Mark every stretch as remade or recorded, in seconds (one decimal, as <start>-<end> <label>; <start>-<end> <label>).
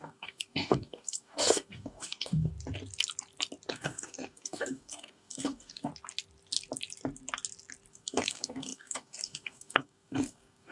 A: 0.0-2.5 remade; 2.5-3.7 recorded; 3.7-5.9 remade; 5.9-7.9 recorded; 7.9-10.7 remade